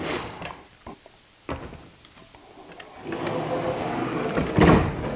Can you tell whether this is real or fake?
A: real